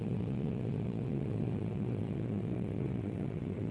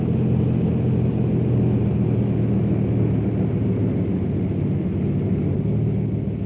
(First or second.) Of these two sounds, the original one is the second